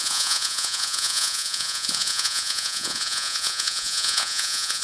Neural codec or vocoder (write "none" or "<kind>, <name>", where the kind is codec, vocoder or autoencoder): vocoder, Vocos